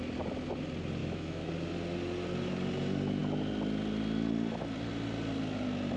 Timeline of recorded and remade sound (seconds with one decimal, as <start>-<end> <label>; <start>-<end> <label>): 0.0-1.0 recorded; 1.0-1.5 remade; 1.5-6.0 recorded